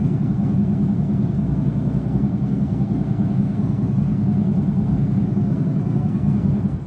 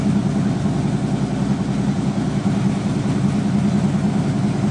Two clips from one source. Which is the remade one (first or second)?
first